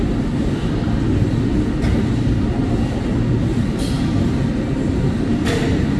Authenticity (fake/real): real